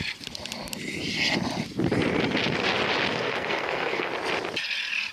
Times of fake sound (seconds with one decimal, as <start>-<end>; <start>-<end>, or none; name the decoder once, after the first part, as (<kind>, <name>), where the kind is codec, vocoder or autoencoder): 3.1-4.1 (codec, SNAC)